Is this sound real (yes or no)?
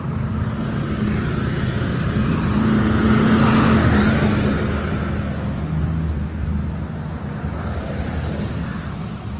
yes